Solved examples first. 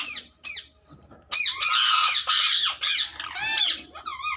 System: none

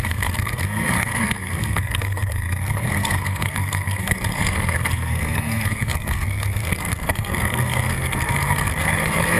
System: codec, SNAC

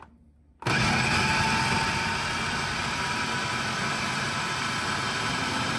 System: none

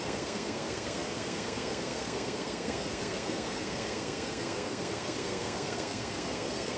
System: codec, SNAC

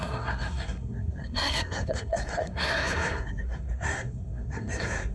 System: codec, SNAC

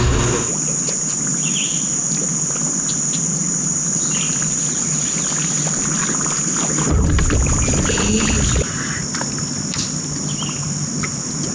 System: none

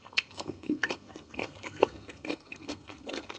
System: codec, SNAC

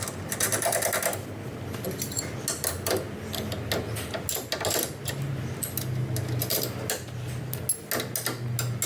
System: none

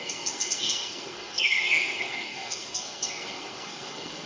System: codec, SNAC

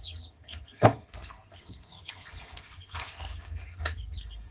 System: codec, SNAC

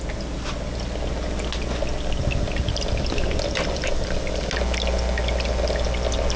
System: none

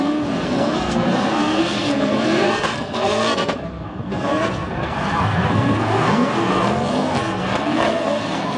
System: codec, SNAC